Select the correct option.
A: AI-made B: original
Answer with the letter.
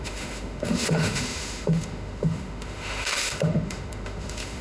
A